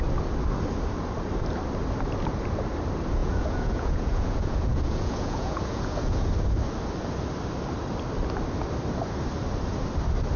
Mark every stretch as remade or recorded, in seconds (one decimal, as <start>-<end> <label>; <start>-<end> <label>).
0.0-3.2 recorded; 3.2-6.3 remade; 6.3-10.4 recorded